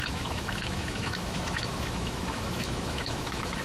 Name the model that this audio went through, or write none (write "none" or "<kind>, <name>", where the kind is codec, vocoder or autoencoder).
autoencoder, DAC-VAE